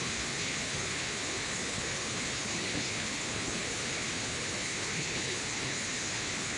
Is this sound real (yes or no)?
no